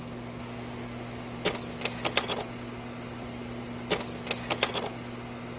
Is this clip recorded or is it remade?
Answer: recorded